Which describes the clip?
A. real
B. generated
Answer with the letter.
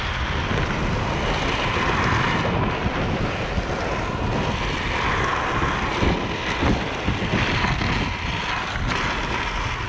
A